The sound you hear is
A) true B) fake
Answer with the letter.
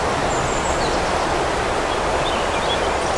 A